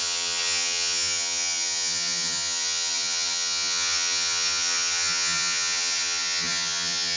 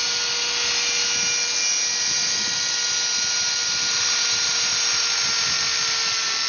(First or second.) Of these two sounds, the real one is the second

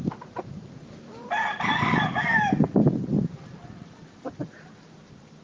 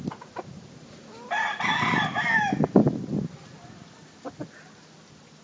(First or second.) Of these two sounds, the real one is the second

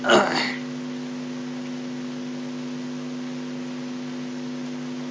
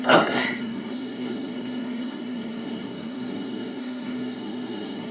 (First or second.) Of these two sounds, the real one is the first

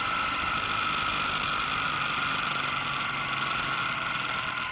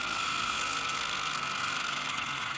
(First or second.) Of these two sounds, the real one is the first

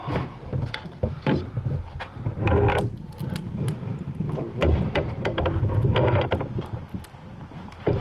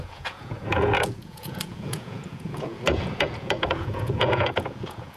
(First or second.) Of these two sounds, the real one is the first